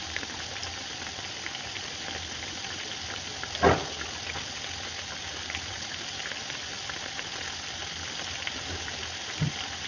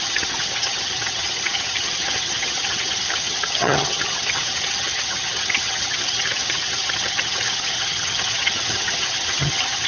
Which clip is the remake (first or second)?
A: second